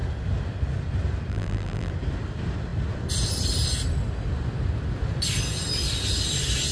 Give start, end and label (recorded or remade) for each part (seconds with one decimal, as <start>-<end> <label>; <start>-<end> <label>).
0.0-1.3 recorded; 1.3-1.9 remade; 1.9-6.7 recorded